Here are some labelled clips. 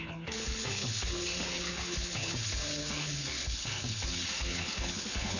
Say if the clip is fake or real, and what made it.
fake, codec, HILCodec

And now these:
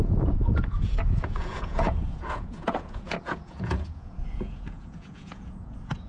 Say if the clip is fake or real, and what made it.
fake, vocoder, Vocos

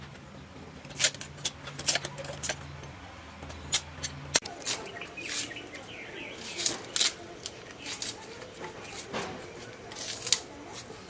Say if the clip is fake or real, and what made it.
real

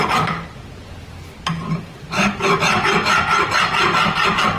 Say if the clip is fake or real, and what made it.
real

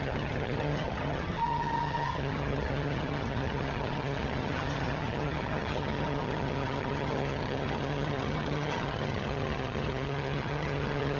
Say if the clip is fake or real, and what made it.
fake, vocoder, HiFi-GAN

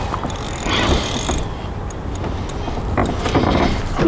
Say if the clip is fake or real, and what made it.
real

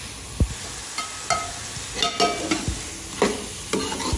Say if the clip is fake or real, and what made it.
real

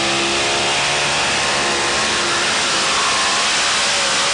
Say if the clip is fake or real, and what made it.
real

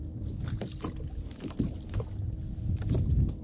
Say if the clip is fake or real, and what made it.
real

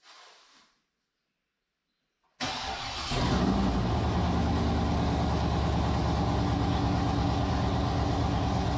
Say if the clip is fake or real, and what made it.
real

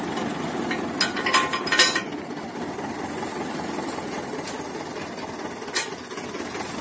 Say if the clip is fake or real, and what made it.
real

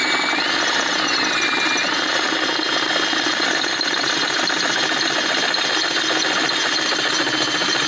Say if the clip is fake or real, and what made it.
real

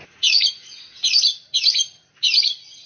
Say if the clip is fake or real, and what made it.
fake, vocoder, Vocos